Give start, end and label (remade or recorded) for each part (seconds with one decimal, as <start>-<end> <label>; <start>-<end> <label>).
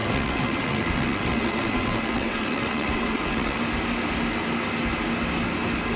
0.0-3.6 remade; 3.6-6.0 recorded